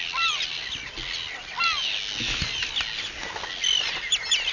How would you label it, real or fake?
real